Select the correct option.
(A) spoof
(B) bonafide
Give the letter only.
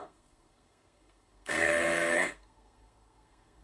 A